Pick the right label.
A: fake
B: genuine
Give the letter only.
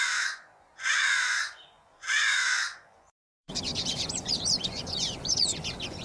A